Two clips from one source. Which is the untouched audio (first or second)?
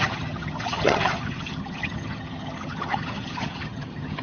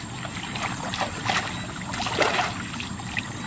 second